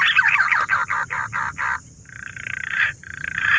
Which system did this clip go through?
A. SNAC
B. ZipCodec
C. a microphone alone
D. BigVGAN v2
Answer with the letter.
C